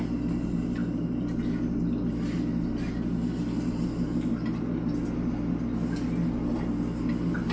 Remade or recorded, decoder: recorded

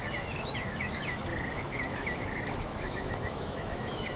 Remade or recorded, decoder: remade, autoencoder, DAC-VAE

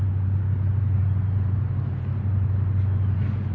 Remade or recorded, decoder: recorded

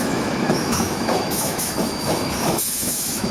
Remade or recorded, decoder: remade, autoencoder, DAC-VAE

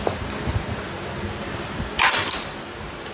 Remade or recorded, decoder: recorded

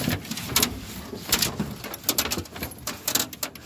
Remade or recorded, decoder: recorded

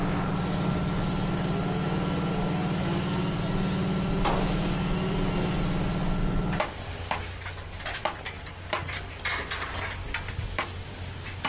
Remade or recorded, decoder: recorded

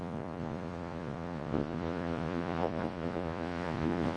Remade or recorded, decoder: remade, vocoder, Vocos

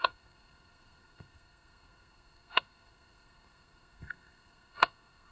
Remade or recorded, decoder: remade, codec, SNAC